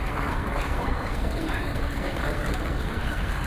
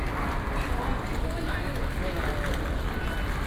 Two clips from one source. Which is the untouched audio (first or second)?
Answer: second